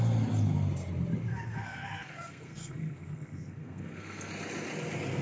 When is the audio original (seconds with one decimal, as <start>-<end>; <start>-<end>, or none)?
0.0-1.3; 4.3-5.2